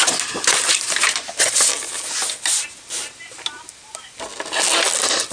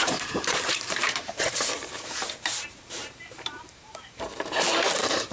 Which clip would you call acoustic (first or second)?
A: first